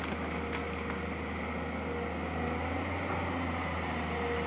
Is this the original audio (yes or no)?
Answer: yes